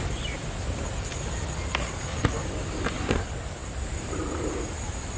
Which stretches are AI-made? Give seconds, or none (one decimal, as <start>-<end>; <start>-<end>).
none